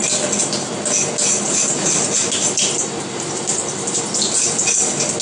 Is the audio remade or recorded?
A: recorded